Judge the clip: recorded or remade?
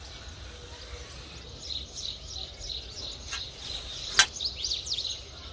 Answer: recorded